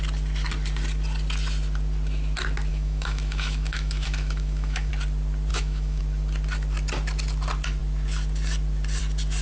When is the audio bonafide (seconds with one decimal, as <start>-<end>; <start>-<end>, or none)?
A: 0.0-2.7; 4.9-5.5; 6.0-9.4